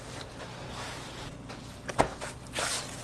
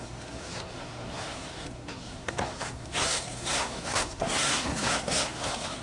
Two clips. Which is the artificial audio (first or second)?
second